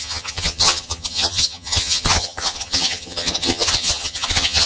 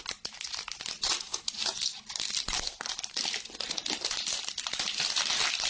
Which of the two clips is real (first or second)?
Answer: second